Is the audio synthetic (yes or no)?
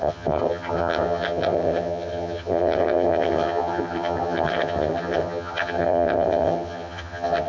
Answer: yes